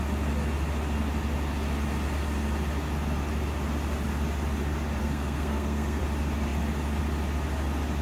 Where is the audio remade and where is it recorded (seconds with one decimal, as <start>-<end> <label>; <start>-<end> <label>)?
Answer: 0.0-5.0 recorded; 5.0-6.0 remade; 6.0-8.0 recorded